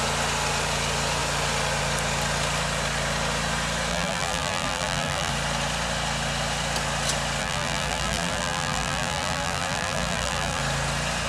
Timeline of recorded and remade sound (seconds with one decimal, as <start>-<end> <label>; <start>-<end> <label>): 0.0-3.9 recorded; 3.9-5.3 remade; 5.3-7.4 recorded; 7.4-10.6 remade; 10.6-11.3 recorded